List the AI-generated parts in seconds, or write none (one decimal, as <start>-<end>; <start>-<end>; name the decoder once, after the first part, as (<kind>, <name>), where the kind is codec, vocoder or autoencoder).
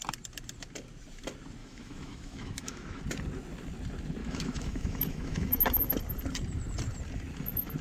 1.6-3.0 (autoencoder, DAC-VAE); 4.2-5.8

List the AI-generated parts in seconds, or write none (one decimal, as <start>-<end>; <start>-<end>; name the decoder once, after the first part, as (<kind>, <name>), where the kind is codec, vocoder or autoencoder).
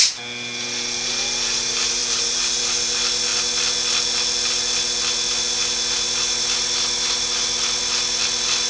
2.0-2.6 (vocoder, BigVGAN v2)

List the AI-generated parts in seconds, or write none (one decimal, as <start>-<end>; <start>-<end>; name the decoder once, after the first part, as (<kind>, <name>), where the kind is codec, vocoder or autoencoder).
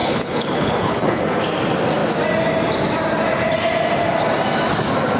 0.0-1.2 (codec, HILCodec)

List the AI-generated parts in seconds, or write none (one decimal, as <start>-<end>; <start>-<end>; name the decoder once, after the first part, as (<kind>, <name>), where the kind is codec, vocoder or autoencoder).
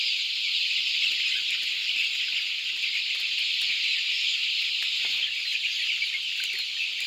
none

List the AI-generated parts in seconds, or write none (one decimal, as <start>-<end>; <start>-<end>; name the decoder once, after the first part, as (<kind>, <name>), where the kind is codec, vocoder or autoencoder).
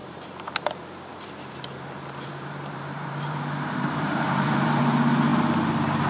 0.0-0.5 (vocoder, BigVGAN v2); 1.1-4.8